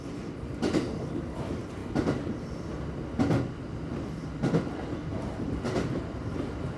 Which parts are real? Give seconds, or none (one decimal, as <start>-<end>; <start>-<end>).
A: 0.0-6.8